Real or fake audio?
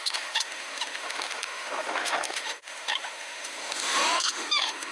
fake